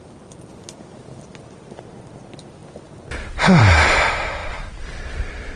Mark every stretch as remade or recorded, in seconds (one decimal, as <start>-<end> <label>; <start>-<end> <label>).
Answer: 0.0-2.6 remade; 2.6-3.6 recorded; 3.6-5.6 remade